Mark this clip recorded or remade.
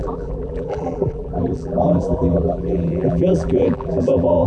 remade